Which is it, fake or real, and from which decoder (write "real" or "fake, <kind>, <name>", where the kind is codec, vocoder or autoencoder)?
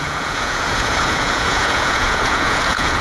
fake, vocoder, Vocos